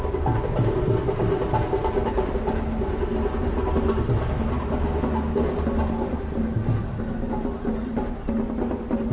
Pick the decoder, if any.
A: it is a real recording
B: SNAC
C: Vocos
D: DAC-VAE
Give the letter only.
A